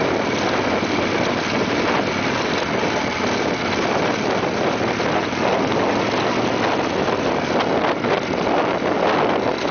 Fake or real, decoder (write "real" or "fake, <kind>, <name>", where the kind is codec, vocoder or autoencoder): real